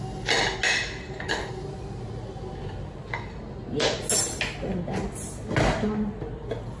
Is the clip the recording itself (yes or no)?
yes